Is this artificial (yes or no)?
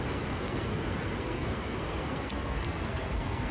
yes